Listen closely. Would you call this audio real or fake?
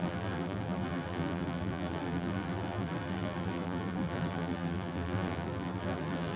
fake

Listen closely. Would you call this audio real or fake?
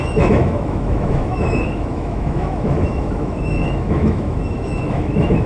fake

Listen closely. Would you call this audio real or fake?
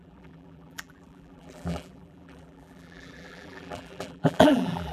fake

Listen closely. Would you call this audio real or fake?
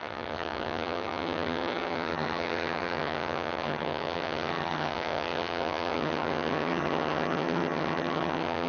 fake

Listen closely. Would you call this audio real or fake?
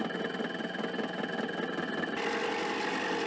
real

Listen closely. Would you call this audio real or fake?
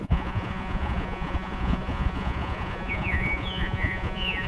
fake